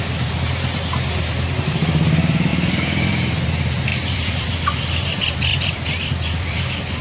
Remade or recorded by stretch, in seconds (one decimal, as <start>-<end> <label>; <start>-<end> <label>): 0.0-2.5 recorded; 2.5-3.1 remade; 3.1-3.9 recorded; 3.9-4.5 remade; 4.5-5.5 recorded; 5.5-7.0 remade